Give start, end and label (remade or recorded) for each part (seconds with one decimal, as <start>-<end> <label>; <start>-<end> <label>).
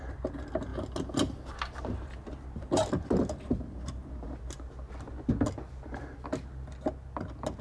0.0-7.6 recorded